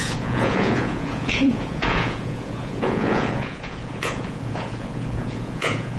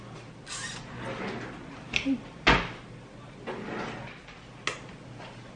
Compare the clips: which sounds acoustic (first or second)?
second